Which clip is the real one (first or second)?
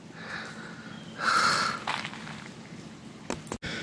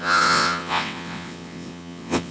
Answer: first